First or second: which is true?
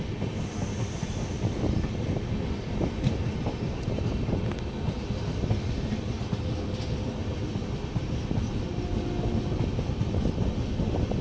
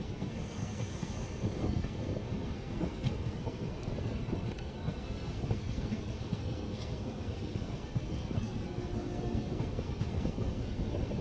first